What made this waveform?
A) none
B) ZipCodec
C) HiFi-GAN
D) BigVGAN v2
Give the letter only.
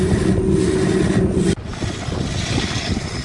A